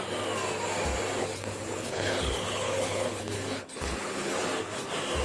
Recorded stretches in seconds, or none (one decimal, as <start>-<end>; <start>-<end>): 0.0-1.2; 4.3-5.2